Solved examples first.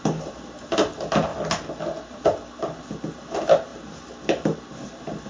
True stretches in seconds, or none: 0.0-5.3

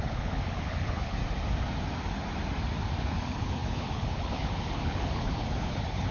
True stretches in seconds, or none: 1.2-3.0

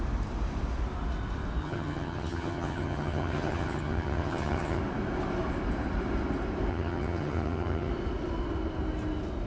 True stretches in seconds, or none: 0.0-1.6; 4.8-6.7; 7.9-9.5

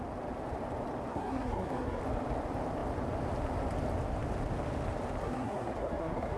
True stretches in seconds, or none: 0.0-1.1; 2.0-5.2